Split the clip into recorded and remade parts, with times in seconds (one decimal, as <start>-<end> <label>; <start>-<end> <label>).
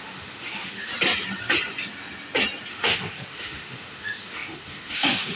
0.0-0.9 remade; 0.9-2.7 recorded; 2.7-5.4 remade